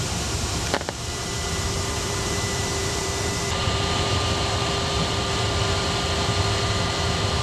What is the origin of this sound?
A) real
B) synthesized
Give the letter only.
B